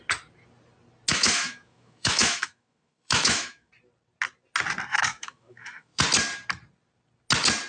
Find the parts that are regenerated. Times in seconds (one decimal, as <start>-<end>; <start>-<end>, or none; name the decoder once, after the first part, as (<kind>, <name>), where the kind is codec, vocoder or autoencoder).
1.1-3.7 (autoencoder, DAC-VAE); 4.9-6.0